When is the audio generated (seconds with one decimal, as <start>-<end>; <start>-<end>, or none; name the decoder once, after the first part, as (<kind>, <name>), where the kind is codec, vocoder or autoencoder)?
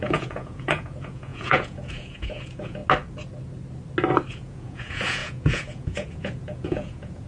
0.0-2.8 (vocoder, Vocos); 4.3-7.3